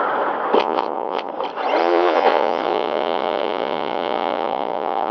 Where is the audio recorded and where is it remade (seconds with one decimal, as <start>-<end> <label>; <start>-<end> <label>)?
0.0-0.6 recorded; 0.6-1.3 remade; 1.3-1.8 recorded; 1.8-5.1 remade